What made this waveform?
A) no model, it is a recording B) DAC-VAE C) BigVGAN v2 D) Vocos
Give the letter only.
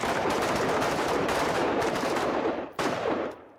C